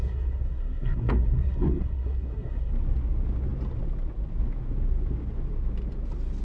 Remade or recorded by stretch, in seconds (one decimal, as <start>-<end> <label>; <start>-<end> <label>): 0.0-2.7 remade; 2.7-6.4 recorded